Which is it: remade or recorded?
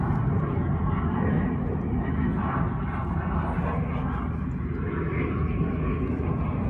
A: recorded